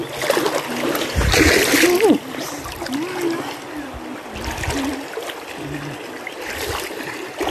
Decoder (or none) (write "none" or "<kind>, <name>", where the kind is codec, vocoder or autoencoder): none